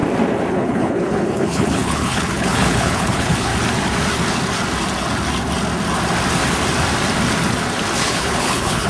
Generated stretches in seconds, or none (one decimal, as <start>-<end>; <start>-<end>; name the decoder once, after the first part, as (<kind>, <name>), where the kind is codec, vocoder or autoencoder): 0.5-3.5 (codec, HILCodec); 8.0-8.9